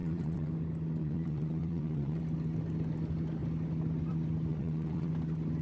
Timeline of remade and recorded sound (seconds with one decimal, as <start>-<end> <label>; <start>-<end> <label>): 0.0-0.5 remade; 0.5-1.0 recorded; 1.0-2.2 remade; 2.2-4.5 recorded; 4.5-5.1 remade; 5.1-5.6 recorded